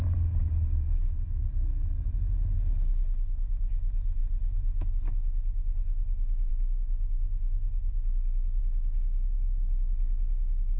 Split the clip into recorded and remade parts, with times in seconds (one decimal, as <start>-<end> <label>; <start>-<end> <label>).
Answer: 0.0-0.4 recorded; 0.4-1.0 remade; 1.0-6.5 recorded; 6.5-8.6 remade; 8.6-10.8 recorded